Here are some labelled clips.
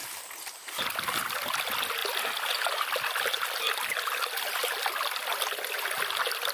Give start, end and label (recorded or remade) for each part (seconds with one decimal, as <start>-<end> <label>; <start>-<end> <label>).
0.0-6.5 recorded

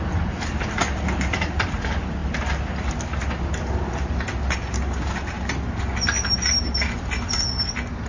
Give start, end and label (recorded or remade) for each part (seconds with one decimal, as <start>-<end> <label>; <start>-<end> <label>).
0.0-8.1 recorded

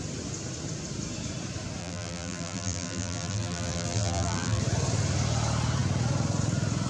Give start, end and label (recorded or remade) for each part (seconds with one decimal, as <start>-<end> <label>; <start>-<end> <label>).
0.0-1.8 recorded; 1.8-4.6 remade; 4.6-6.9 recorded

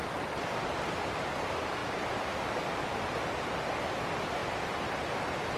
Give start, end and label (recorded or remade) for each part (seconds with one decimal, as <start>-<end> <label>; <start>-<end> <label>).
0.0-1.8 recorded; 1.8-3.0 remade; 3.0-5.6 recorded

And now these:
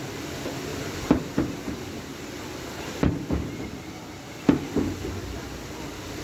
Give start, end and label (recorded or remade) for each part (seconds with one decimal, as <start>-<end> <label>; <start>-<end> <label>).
0.0-6.2 recorded